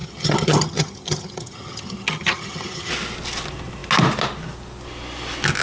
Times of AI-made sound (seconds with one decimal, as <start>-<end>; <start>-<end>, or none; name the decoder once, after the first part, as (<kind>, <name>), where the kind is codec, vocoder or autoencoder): 0.0-2.9 (vocoder, HiFi-GAN)